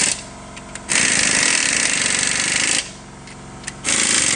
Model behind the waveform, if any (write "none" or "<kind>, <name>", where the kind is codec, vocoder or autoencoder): none